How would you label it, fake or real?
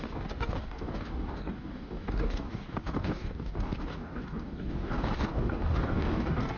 fake